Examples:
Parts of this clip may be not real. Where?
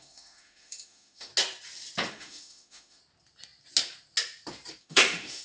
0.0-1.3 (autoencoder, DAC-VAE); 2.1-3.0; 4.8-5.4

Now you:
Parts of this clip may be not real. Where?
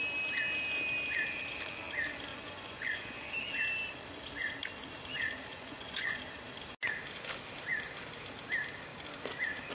2.3-3.3 (vocoder, Vocos); 5.5-6.2